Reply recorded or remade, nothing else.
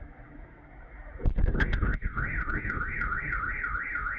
remade